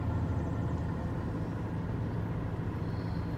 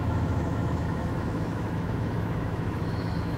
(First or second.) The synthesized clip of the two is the second